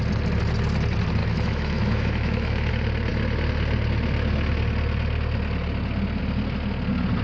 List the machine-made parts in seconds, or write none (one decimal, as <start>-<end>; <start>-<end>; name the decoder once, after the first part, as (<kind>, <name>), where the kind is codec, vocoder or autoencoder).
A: 1.2-2.7 (autoencoder, DAC-VAE)